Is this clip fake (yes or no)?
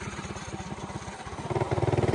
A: no